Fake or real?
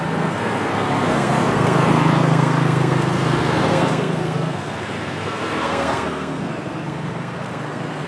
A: fake